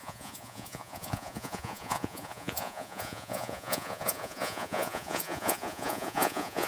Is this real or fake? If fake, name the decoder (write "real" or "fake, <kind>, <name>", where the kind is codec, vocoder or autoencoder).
fake, vocoder, Vocos